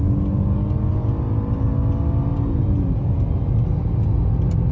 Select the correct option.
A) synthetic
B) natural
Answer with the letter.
B